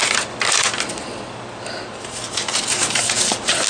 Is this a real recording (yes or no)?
yes